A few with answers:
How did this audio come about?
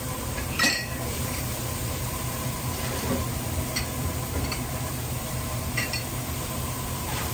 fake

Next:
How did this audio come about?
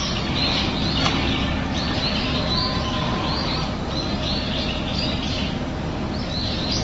real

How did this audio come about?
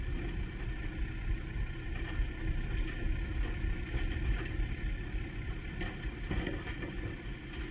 real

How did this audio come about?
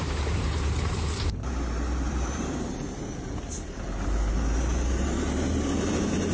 fake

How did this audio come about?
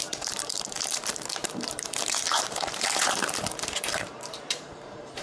fake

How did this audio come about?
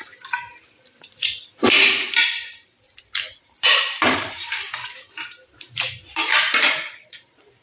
fake